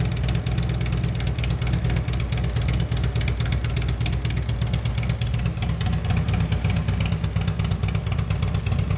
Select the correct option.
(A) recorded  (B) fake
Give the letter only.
A